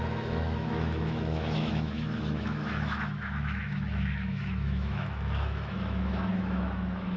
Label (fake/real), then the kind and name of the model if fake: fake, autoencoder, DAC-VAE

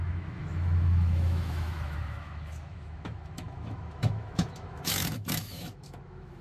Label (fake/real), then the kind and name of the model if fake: fake, autoencoder, DAC-VAE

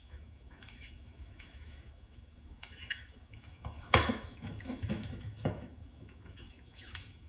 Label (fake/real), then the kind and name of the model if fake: fake, autoencoder, DAC-VAE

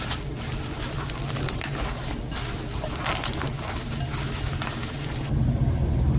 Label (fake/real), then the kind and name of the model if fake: real